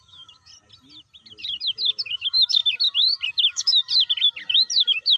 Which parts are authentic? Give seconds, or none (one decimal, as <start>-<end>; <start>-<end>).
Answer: 0.5-1.6; 2.6-3.3; 3.8-4.8